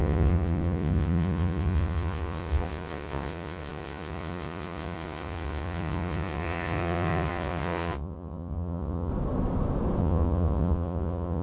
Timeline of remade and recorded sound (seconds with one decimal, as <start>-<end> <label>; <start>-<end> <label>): 0.0-9.1 remade; 9.1-10.0 recorded; 10.0-11.4 remade